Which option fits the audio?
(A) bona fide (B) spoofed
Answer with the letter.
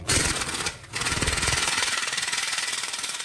B